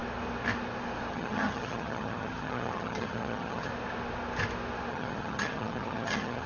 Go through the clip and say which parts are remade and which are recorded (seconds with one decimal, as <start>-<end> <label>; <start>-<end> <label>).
0.0-1.1 recorded; 1.1-3.7 remade; 3.7-4.9 recorded; 4.9-6.5 remade